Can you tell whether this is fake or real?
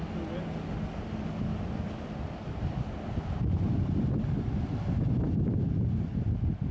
real